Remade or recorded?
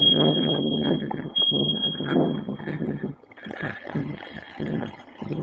remade